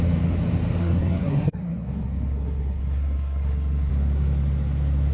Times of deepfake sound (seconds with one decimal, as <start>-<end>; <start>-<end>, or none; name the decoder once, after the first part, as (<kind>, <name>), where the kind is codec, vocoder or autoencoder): 0.8-3.9 (codec, SNAC)